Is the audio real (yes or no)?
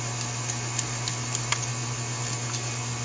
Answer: yes